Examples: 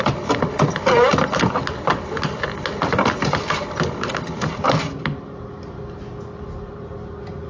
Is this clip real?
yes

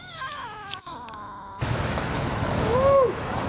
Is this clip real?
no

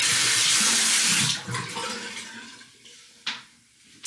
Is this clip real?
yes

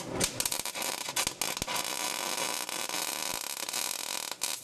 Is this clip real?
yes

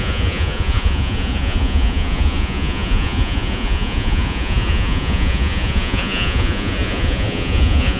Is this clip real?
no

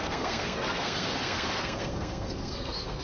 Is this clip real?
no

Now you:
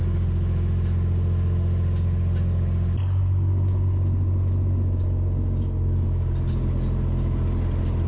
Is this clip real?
yes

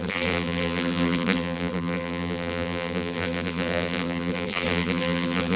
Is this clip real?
no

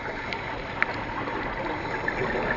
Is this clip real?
yes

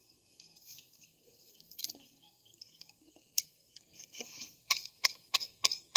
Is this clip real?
no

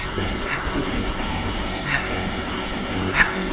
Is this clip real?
no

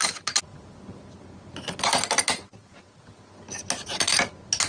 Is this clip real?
yes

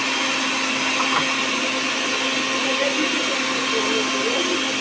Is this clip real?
yes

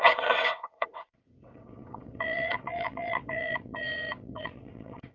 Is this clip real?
no